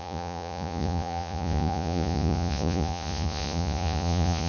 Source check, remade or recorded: remade